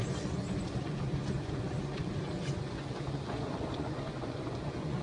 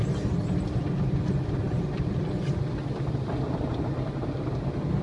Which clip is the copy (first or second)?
first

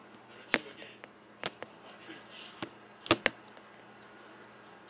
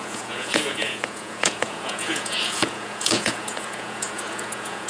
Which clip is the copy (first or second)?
second